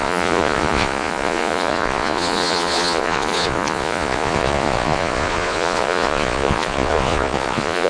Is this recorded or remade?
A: remade